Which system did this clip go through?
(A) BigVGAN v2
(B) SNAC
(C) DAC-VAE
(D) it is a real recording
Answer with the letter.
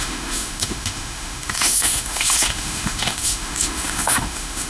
C